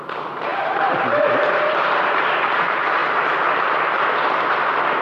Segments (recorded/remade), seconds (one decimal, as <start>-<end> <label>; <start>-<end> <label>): 0.0-3.0 remade; 3.0-5.0 recorded